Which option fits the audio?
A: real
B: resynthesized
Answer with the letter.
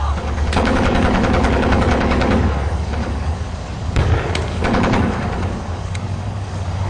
B